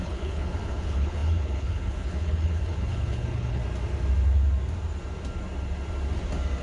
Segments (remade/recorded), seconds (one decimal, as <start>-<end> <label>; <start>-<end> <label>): 0.0-3.6 remade; 3.6-6.6 recorded